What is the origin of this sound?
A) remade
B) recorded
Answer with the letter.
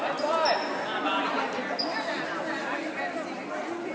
B